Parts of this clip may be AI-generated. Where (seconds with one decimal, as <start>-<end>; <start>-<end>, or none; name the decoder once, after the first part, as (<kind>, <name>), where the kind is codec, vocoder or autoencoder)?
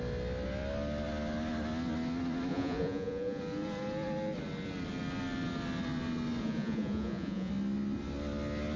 2.5-3.4 (vocoder, Vocos); 6.4-7.5